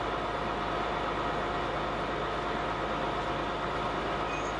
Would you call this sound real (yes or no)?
yes